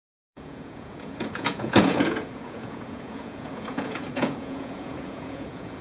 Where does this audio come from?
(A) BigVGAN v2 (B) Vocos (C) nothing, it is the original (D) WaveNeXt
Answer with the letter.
B